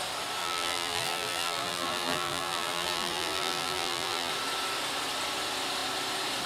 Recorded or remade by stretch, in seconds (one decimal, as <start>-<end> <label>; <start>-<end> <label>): 0.0-0.4 recorded; 0.4-4.3 remade; 4.3-6.5 recorded